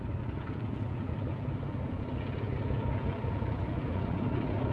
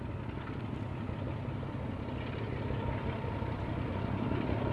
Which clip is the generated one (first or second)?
first